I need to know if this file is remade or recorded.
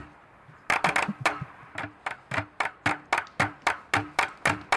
recorded